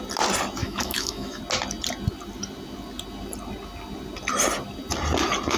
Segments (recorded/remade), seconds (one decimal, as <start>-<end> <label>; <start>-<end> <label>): 0.0-0.6 recorded; 0.6-1.4 remade; 1.4-5.6 recorded